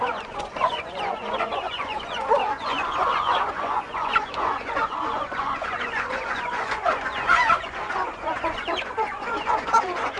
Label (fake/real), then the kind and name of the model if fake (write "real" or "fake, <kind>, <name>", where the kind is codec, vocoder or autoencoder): fake, vocoder, Vocos